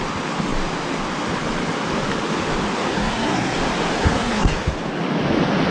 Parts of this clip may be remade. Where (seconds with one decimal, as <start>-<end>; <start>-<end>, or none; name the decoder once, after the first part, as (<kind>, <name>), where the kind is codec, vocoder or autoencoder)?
2.9-3.6 (codec, SNAC); 4.0-4.7